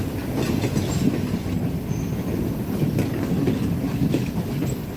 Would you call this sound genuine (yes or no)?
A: yes